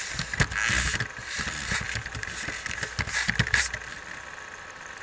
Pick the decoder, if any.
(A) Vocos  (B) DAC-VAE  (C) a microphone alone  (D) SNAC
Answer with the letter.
C